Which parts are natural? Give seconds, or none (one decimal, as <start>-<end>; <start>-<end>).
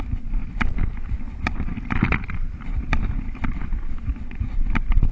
0.0-5.1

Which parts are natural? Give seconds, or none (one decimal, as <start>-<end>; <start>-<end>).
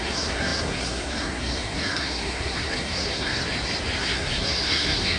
3.4-4.0